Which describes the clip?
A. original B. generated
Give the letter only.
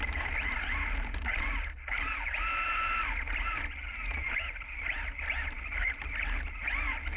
A